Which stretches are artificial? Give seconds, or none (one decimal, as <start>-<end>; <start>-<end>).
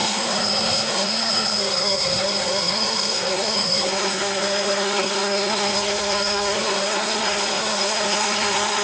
0.0-8.8